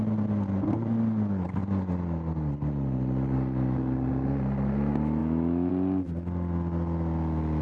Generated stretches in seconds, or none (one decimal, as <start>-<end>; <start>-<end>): 5.2-5.7